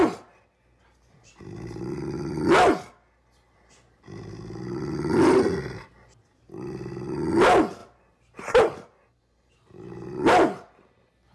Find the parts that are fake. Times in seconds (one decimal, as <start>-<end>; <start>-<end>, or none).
none